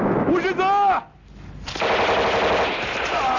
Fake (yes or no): no